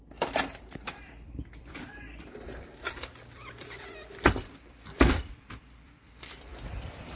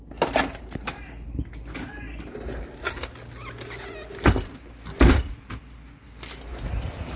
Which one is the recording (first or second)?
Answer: second